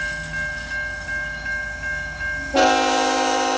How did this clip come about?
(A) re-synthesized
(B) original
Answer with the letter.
B